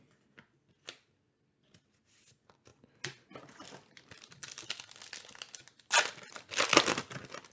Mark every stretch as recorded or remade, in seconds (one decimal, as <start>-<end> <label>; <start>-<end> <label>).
0.0-7.5 recorded